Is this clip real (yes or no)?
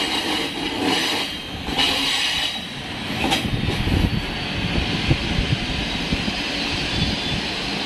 yes